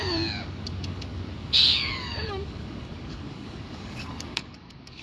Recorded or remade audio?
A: remade